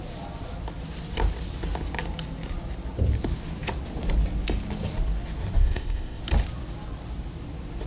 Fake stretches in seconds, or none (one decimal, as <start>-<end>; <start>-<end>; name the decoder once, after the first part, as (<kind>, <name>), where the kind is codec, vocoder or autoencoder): 5.6-6.2 (codec, ZipCodec)